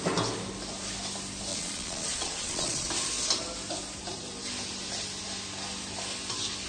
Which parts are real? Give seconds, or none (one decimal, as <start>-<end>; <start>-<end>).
0.0-1.5; 2.9-6.7